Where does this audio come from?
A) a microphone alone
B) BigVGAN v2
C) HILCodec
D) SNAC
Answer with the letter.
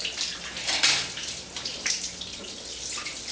A